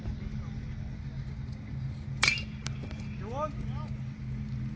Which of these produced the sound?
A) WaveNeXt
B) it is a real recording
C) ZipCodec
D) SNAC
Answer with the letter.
B